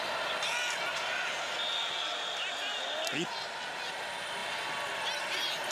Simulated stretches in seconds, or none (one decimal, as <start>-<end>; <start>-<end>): none